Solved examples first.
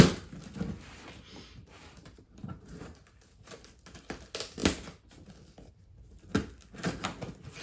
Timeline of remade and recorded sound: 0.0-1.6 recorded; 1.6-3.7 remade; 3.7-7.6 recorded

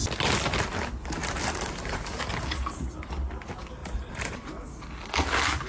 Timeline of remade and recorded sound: 0.0-1.2 recorded; 1.2-2.2 remade; 2.2-3.8 recorded; 3.8-4.4 remade; 4.4-5.7 recorded

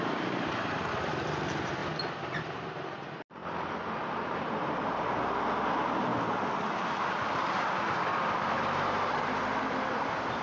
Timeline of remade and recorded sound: 0.0-1.8 remade; 1.8-2.4 recorded; 2.4-3.4 remade; 3.4-4.5 recorded; 4.5-6.1 remade; 6.1-7.0 recorded; 7.0-10.4 remade

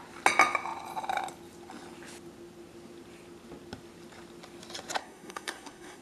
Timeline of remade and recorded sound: 0.0-5.0 recorded; 5.0-6.0 remade

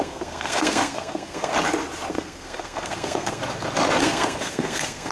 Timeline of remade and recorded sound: 0.0-1.5 remade; 1.5-2.1 recorded; 2.1-3.4 remade; 3.4-4.0 recorded; 4.0-5.1 remade